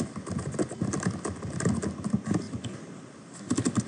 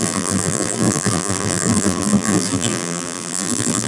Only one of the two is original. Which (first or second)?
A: first